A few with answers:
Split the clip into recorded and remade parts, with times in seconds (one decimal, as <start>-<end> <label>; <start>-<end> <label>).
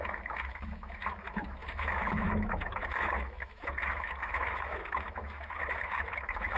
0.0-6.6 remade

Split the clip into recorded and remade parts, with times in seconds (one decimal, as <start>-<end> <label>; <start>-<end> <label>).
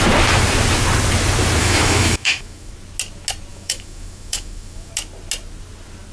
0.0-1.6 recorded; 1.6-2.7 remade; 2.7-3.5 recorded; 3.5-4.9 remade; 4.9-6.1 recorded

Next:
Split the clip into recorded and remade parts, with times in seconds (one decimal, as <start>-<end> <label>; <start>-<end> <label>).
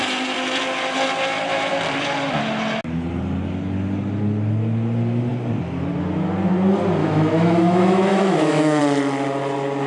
0.0-7.0 recorded; 7.0-8.8 remade; 8.8-9.9 recorded